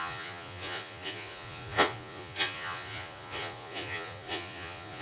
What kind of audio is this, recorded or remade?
remade